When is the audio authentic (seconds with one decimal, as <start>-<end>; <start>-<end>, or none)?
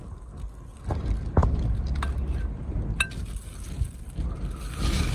0.0-5.1